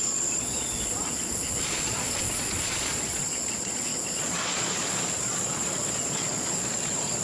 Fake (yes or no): yes